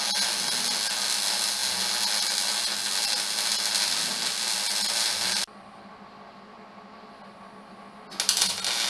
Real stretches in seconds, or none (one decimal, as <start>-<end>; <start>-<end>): 0.0-8.9